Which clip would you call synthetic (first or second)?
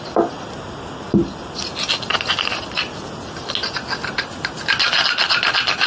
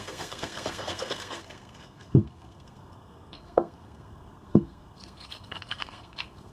second